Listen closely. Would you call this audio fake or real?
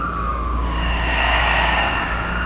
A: fake